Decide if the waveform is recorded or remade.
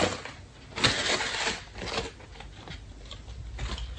recorded